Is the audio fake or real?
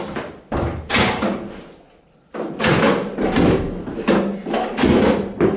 real